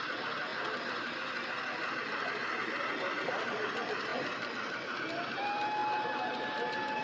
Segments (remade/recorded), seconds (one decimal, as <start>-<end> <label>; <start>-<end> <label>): 0.0-0.5 recorded; 0.5-3.1 remade; 3.1-4.1 recorded; 4.1-5.0 remade; 5.0-5.8 recorded; 5.8-7.0 remade

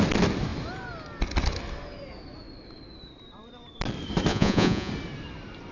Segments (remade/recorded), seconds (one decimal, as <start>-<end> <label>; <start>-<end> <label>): 0.0-4.3 recorded; 4.3-4.9 remade; 4.9-5.7 recorded

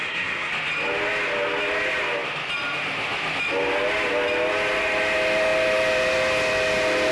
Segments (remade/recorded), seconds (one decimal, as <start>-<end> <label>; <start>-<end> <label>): 0.0-0.5 remade; 0.5-7.1 recorded

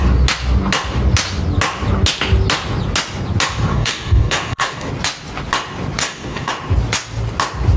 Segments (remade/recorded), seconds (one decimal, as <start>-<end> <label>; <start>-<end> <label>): 0.0-3.7 recorded; 3.7-4.9 remade; 4.9-6.0 recorded; 6.0-6.5 remade; 6.5-7.8 recorded

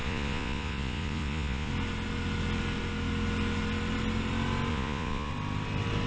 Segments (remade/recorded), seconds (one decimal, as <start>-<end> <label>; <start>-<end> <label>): 0.0-1.7 remade; 1.7-4.7 recorded; 4.7-5.3 remade; 5.3-6.1 recorded